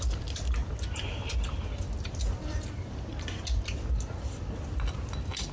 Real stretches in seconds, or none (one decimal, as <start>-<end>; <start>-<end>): 0.0-5.5